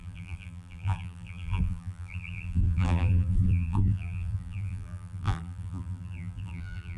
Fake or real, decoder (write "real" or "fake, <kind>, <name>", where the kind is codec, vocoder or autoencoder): fake, vocoder, BigVGAN v2